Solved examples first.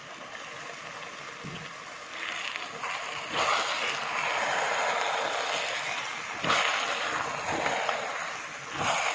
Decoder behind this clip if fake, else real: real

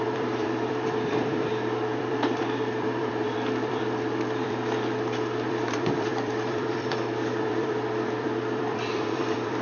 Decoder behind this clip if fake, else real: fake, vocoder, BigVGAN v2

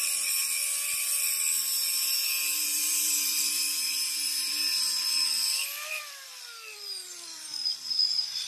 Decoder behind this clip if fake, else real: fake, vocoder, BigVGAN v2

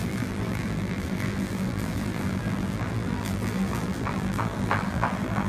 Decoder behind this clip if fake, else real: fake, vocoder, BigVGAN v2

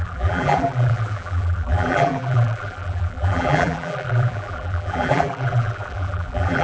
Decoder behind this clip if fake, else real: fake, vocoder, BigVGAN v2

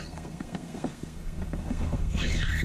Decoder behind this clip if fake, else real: fake, codec, SNAC